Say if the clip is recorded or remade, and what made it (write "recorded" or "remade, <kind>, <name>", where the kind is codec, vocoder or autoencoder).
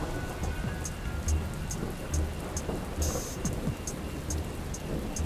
recorded